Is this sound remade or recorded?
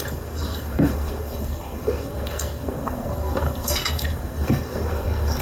remade